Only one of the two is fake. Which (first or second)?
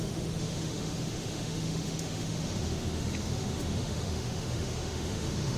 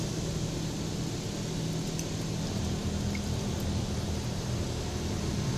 first